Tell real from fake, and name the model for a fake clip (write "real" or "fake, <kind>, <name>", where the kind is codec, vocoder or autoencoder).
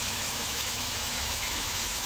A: fake, autoencoder, DAC-VAE